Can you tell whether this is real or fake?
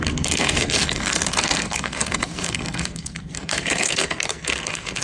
fake